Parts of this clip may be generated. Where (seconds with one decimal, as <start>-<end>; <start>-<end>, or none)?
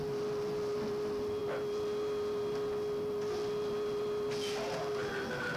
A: none